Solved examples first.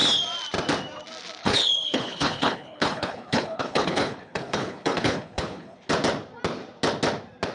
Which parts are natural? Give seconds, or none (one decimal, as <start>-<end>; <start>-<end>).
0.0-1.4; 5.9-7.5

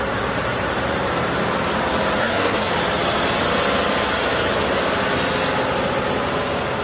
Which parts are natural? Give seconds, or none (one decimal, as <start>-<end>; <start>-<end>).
0.0-2.2; 2.7-6.8

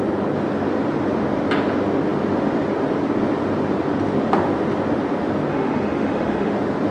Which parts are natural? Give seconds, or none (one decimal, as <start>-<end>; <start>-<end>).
0.0-5.5; 6.5-6.9

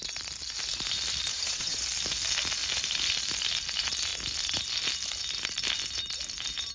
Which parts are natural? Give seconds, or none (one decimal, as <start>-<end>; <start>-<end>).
0.0-1.3; 1.8-6.7